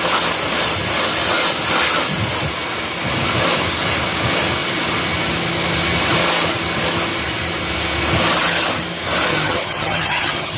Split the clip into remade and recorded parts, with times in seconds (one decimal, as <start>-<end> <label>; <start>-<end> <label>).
0.0-9.3 recorded; 9.3-10.6 remade